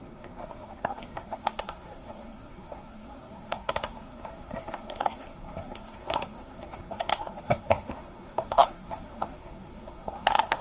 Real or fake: fake